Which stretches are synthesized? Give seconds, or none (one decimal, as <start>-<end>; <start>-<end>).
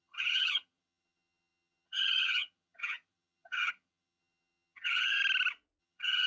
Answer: 0.0-5.2; 5.8-6.3